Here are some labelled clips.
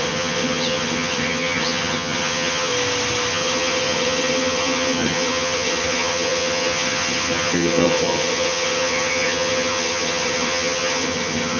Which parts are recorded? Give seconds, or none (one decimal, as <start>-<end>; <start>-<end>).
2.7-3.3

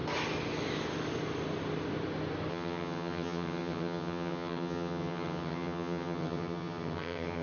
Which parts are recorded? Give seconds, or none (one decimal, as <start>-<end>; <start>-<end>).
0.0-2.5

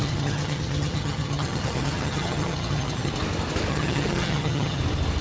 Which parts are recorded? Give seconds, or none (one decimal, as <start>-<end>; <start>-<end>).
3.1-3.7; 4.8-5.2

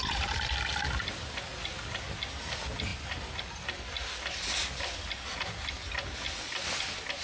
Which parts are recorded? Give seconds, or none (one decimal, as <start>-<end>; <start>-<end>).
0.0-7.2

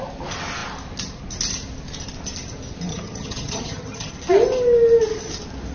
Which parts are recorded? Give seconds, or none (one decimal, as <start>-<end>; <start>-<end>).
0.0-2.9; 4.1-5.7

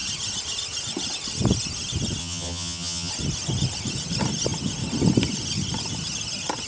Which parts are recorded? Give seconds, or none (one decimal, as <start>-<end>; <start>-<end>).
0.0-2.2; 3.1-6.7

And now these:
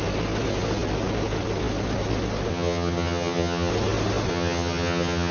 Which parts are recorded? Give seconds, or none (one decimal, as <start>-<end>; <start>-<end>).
0.0-2.5; 3.7-4.3

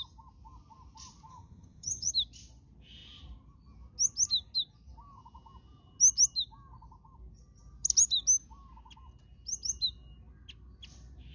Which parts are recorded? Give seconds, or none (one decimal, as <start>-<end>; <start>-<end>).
0.0-1.3; 2.1-11.3